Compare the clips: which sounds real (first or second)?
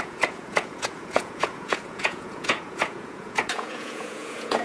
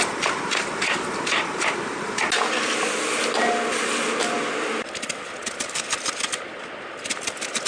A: second